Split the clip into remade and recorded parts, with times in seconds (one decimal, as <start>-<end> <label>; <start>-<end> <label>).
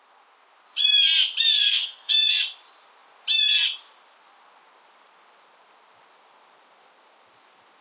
0.0-1.6 recorded; 1.6-2.1 remade; 2.1-7.8 recorded